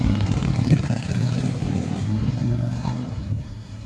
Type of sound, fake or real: fake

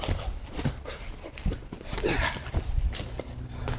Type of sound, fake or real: real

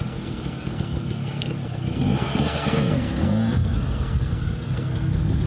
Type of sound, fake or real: fake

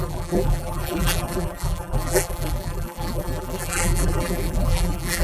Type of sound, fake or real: fake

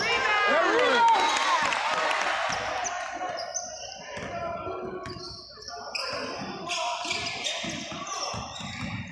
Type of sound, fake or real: real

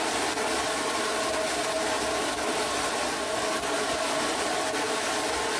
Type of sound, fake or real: real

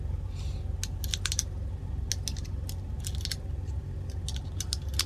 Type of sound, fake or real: real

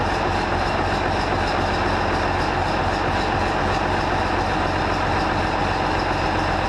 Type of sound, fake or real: real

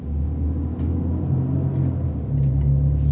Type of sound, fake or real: real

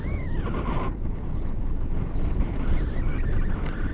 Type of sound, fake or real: real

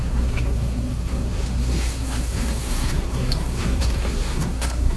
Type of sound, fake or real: fake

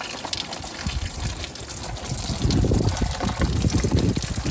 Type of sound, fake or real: real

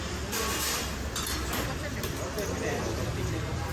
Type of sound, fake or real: real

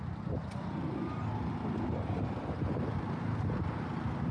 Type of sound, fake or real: real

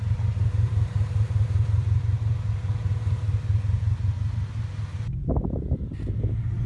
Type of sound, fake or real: real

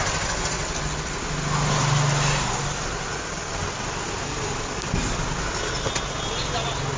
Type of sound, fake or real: real